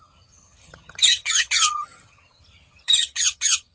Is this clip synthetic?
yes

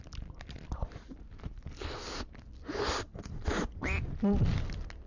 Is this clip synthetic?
no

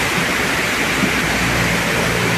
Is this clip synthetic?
no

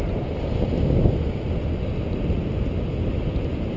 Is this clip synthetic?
no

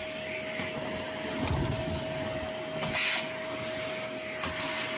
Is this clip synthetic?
no